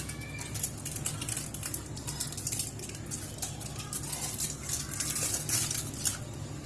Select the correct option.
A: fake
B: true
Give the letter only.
B